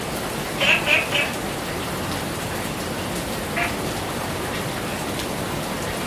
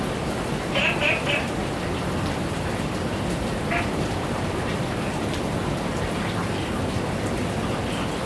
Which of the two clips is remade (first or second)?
second